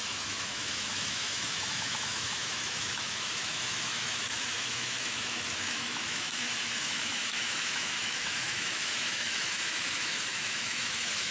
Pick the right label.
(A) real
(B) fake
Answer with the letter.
B